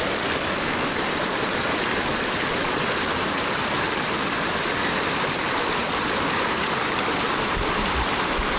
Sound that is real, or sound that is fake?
real